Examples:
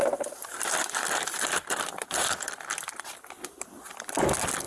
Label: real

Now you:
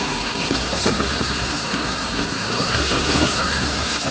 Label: fake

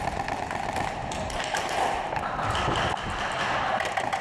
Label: real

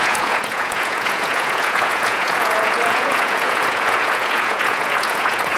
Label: fake